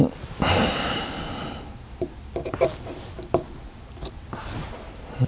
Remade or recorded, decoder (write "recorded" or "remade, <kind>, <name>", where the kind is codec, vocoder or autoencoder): recorded